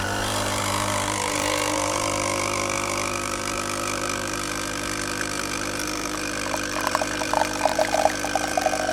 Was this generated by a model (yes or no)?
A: yes